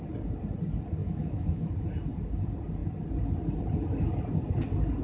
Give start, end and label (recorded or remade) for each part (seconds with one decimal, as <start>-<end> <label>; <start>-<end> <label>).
0.0-1.0 recorded; 1.0-1.7 remade; 1.7-5.0 recorded